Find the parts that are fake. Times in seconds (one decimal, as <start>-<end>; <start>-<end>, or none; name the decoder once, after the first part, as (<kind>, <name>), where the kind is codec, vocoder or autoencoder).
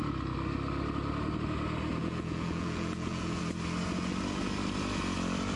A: 2.0-3.4 (vocoder, Vocos)